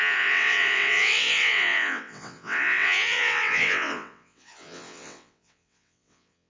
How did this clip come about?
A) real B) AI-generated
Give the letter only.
B